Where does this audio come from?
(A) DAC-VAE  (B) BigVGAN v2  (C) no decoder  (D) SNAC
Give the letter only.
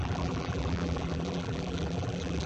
B